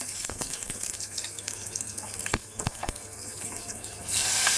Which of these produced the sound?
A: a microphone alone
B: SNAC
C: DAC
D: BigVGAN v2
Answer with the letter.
B